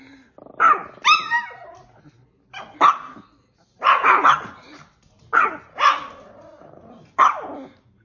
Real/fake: real